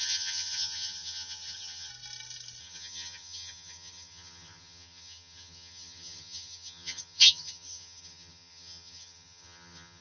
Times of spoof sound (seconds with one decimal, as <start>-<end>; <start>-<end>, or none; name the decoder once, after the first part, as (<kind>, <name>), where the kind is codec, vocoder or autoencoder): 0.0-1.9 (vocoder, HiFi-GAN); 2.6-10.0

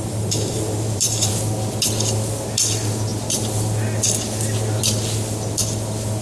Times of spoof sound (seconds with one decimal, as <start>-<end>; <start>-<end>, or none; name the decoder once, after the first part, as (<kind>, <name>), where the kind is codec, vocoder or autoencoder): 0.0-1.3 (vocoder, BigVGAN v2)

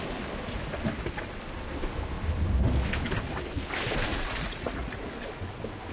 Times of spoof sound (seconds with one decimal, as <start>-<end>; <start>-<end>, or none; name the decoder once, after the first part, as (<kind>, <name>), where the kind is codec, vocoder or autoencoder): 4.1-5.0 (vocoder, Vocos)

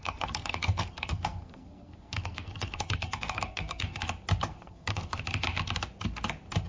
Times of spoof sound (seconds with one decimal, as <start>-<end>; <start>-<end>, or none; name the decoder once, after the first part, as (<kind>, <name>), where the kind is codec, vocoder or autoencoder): 0.0-4.0 (codec, SNAC); 4.5-5.2

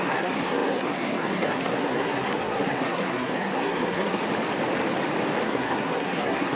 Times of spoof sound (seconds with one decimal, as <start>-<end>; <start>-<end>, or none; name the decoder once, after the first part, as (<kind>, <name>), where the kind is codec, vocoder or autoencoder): 0.0-4.2 (codec, SNAC); 5.4-6.6

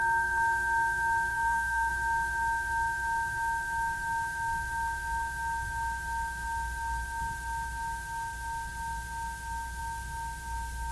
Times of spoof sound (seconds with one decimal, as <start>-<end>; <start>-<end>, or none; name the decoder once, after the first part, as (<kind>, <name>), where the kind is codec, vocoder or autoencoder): 1.3-1.9 (codec, SNAC)

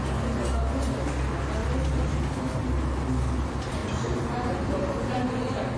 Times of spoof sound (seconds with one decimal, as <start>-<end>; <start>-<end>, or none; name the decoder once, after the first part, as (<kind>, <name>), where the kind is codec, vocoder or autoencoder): 1.6-2.2 (vocoder, BigVGAN v2); 3.8-5.2

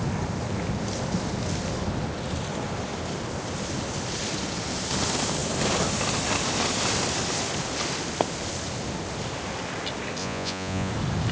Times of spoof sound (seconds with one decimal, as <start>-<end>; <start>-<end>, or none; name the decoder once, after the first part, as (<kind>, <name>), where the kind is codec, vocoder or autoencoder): 10.2-10.9 (vocoder, Vocos)